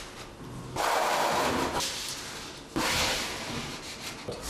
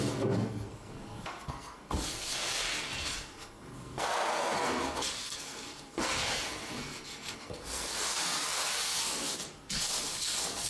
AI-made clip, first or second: second